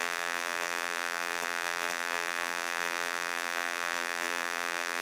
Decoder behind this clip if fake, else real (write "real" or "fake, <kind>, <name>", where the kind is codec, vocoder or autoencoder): fake, vocoder, BigVGAN v2